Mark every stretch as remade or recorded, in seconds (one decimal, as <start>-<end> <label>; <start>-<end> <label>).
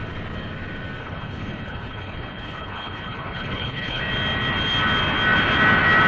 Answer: 0.0-1.0 recorded; 1.0-4.0 remade; 4.0-6.1 recorded